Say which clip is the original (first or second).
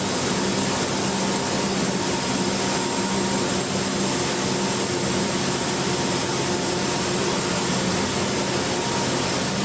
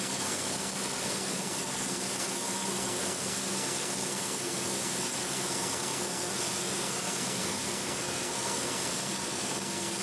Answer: first